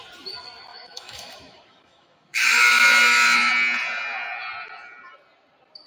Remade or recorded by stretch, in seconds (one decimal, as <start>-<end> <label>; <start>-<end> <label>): 0.0-0.7 recorded; 0.7-3.5 remade; 3.5-5.9 recorded